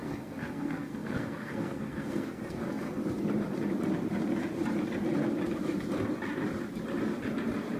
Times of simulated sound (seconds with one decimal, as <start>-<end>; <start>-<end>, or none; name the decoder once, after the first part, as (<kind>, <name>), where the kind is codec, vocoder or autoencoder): 0.0-3.0 (codec, SNAC)